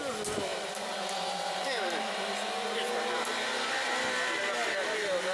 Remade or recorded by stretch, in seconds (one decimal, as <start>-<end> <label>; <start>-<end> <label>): 0.0-0.5 recorded; 0.5-3.7 remade; 3.7-5.3 recorded